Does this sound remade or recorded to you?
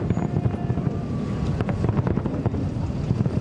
recorded